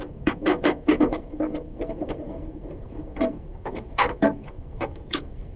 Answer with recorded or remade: remade